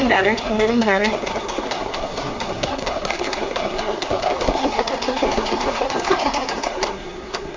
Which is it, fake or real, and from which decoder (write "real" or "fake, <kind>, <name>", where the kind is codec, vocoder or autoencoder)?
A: fake, codec, SNAC